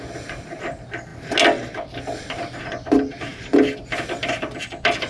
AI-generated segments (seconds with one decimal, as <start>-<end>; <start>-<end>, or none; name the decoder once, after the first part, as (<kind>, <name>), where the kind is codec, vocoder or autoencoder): none